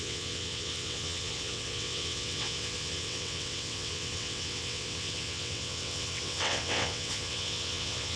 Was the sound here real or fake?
fake